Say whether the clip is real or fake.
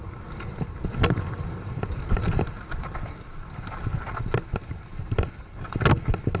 real